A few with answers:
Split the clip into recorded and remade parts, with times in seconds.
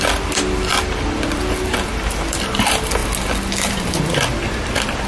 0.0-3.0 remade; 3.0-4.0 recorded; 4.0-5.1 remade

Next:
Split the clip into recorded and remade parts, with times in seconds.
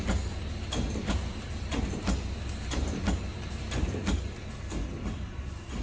0.0-3.3 recorded; 3.3-4.5 remade; 4.5-5.8 recorded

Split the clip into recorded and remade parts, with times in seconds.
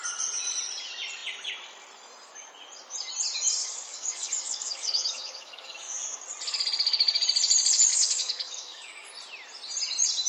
0.0-3.6 recorded; 3.6-6.2 remade; 6.2-7.9 recorded; 7.9-9.1 remade; 9.1-10.3 recorded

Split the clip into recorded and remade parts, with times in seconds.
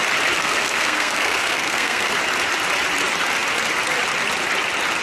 0.0-0.4 recorded; 0.4-2.1 remade; 2.1-5.0 recorded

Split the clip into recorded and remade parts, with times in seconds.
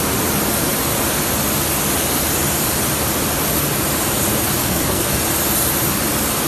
0.0-4.6 recorded; 4.6-5.2 remade; 5.2-6.5 recorded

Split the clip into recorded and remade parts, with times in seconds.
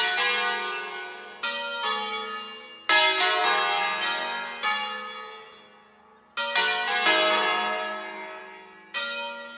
0.0-9.6 recorded